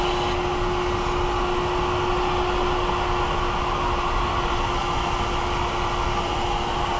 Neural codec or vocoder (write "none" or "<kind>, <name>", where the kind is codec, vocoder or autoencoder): none